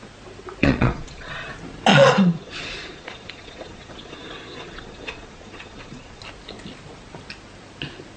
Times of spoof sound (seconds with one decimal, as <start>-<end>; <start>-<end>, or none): 0.6-1.5; 1.9-6.2